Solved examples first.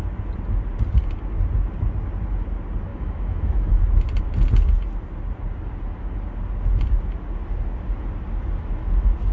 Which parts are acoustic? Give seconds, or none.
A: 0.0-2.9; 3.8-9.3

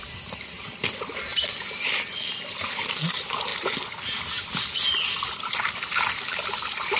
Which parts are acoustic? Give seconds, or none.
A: 1.3-3.1; 3.5-4.8

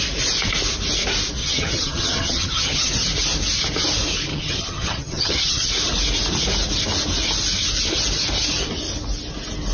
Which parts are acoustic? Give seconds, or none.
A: 0.0-1.4; 2.9-4.3; 5.7-9.7

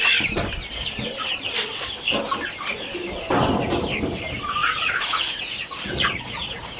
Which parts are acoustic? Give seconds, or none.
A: 0.0-4.6

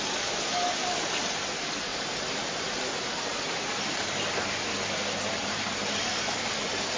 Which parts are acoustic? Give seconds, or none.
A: 0.0-7.0

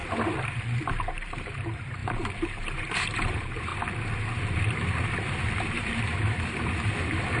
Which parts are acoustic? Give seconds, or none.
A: 0.0-0.8; 3.7-5.5

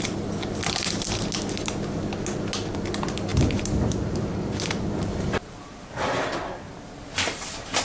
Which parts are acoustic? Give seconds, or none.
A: 0.0-7.8